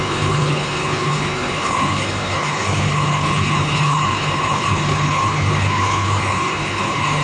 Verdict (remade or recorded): remade